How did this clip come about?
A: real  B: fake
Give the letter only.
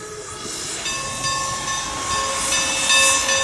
A